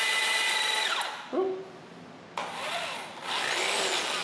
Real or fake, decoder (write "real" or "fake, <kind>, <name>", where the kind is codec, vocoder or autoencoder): real